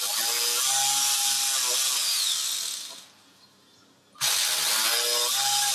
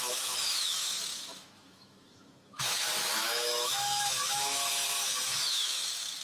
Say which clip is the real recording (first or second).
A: first